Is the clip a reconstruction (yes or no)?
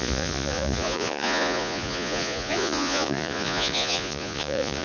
yes